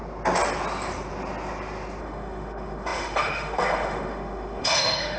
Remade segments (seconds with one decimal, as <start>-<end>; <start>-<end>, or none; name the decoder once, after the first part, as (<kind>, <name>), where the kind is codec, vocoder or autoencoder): 2.0-5.2 (autoencoder, DAC-VAE)